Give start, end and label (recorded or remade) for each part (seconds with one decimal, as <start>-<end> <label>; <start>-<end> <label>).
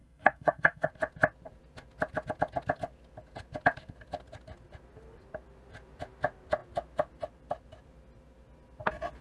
0.0-0.9 remade; 0.9-9.2 recorded